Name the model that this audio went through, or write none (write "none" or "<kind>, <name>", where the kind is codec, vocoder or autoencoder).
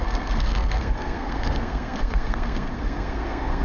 codec, SNAC